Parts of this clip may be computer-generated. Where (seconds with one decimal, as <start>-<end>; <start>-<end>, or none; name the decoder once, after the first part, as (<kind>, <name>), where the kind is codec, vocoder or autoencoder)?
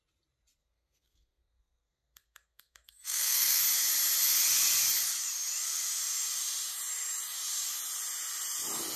0.6-3.6 (codec, SNAC)